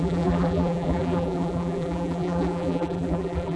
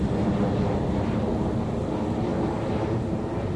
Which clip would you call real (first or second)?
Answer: second